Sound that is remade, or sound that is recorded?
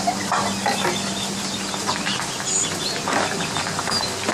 recorded